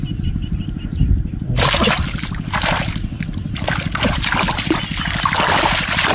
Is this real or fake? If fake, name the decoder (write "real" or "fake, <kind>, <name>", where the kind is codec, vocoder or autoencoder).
real